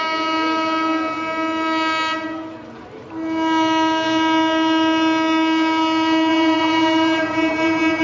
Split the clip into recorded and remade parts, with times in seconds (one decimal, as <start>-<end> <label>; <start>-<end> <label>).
0.0-6.3 recorded; 6.3-8.0 remade